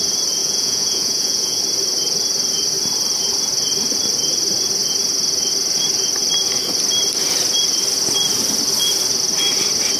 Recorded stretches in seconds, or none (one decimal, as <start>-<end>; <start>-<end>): 0.0-0.4; 1.6-10.0